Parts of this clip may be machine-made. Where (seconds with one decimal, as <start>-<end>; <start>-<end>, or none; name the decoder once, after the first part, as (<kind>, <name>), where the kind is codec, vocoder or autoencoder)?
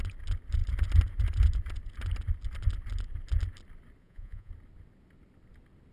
4.0-4.5 (vocoder, Vocos)